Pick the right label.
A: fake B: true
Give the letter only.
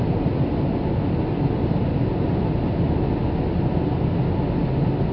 B